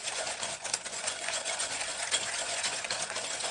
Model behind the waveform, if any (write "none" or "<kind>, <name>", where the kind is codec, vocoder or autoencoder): vocoder, Vocos